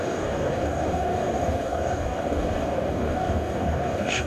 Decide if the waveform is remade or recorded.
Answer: remade